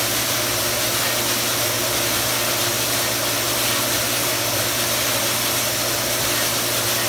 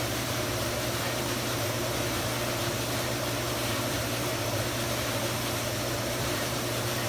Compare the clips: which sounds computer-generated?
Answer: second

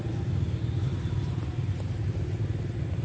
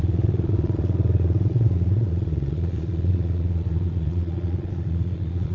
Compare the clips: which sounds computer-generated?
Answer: second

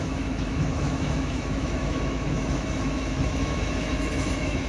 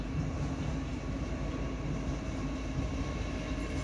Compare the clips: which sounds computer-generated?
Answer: first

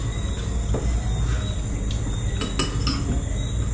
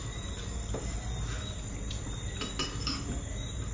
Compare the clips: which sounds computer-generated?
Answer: second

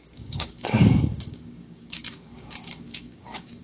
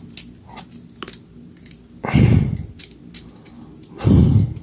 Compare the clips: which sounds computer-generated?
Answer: first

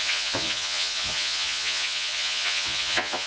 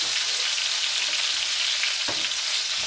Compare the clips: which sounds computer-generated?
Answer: first